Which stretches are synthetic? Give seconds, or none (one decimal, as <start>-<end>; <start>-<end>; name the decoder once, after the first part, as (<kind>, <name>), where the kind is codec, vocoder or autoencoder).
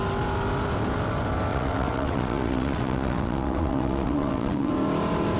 1.5-4.7 (vocoder, WaveNeXt)